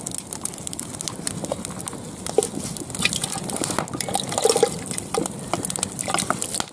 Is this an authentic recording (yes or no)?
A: yes